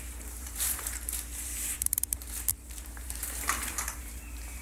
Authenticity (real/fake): fake